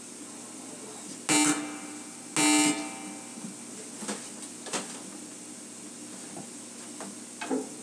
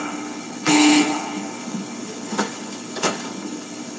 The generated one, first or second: second